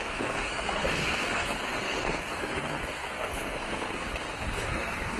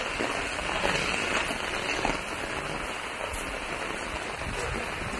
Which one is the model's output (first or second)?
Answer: first